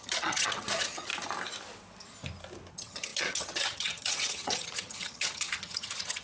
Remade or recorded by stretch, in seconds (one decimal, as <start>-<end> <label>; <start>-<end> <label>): 0.0-1.1 remade; 1.1-2.7 recorded; 2.7-6.2 remade